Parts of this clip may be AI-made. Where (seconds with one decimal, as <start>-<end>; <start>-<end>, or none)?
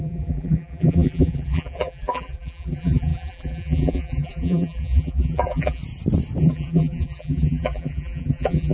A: 0.0-5.8; 6.4-8.7